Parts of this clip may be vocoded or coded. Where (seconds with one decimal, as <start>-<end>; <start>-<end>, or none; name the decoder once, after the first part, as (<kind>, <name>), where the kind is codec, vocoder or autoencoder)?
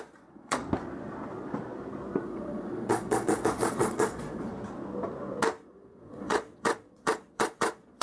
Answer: 0.0-0.6 (vocoder, Vocos); 2.2-4.5; 5.6-8.0